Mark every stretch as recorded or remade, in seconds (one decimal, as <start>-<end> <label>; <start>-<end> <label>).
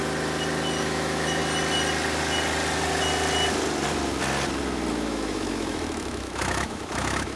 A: 0.0-0.8 recorded; 0.8-1.4 remade; 1.4-4.9 recorded; 4.9-7.4 remade